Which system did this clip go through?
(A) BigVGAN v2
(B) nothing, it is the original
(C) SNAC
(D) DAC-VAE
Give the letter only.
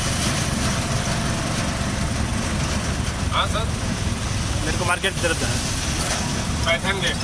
B